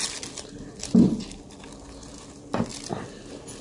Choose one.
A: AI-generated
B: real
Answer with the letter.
B